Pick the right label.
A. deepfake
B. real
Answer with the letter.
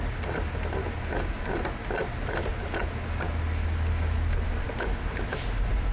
B